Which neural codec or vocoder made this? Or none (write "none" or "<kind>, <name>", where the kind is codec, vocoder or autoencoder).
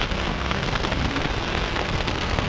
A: codec, SNAC